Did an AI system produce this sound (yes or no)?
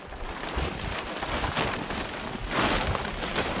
no